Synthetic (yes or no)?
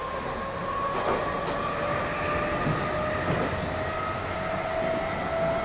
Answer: no